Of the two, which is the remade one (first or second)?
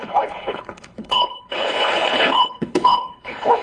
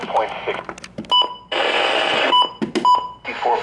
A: first